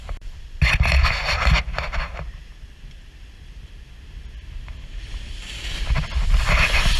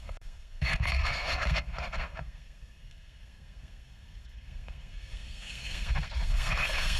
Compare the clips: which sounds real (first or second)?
first